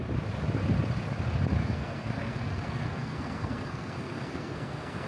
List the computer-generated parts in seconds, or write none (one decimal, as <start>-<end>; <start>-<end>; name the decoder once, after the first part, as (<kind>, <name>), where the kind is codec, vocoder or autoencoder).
1.6-5.1 (codec, SNAC)